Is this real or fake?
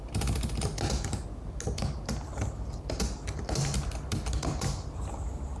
real